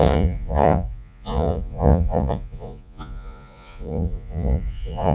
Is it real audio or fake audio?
fake